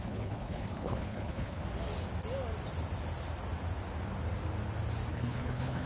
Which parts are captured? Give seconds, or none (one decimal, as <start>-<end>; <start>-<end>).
1.6-5.1